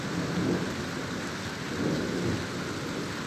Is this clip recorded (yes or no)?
yes